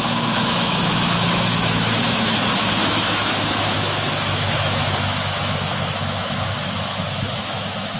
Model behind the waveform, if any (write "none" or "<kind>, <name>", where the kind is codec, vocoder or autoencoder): autoencoder, DAC-VAE